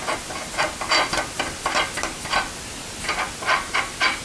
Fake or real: real